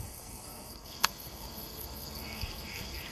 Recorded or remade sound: remade